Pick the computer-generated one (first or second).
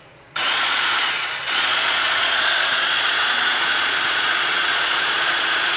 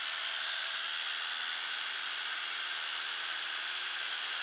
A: first